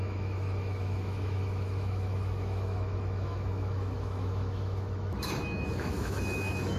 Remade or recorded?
remade